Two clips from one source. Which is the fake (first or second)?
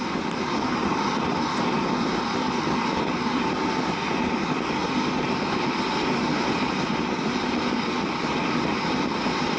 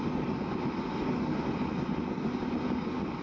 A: first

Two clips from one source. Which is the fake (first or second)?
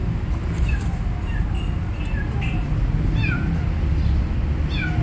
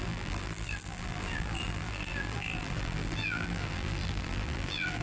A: second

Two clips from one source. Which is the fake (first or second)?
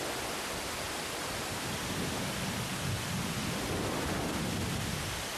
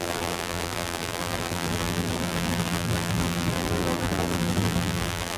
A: second